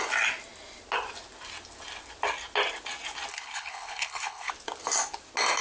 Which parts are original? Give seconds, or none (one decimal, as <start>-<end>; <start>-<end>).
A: 0.0-3.3; 4.5-5.6